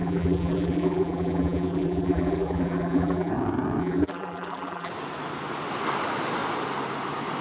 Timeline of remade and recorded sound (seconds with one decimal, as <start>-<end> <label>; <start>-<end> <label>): 0.0-3.3 remade; 3.3-3.8 recorded; 3.8-4.9 remade; 4.9-7.4 recorded